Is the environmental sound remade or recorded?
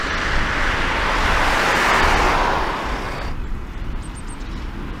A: recorded